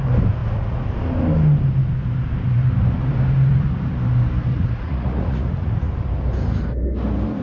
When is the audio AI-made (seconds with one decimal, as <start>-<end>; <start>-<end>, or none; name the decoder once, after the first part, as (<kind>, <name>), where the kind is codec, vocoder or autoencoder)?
4.5-5.9 (vocoder, Vocos)